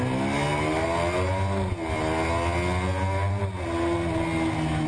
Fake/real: real